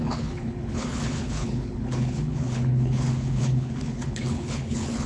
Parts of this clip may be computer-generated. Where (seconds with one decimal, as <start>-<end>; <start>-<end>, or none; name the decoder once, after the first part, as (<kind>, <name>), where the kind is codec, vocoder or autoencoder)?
0.0-5.1 (codec, HILCodec)

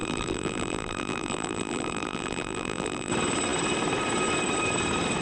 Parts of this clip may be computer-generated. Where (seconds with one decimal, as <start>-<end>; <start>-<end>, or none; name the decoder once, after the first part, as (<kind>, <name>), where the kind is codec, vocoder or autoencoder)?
0.0-3.1 (vocoder, BigVGAN v2)